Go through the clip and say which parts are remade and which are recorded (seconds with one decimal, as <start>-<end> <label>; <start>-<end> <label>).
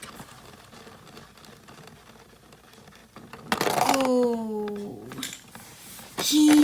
0.0-6.6 recorded